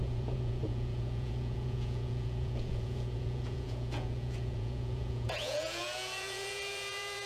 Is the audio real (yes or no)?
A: no